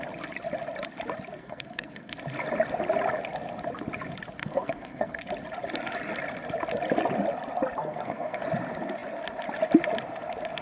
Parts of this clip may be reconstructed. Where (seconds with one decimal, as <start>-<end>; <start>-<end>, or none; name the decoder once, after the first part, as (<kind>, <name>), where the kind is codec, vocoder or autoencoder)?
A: 1.4-2.1 (codec, SNAC); 4.4-5.2; 7.8-8.4